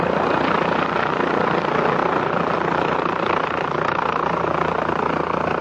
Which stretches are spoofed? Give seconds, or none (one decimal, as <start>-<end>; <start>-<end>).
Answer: none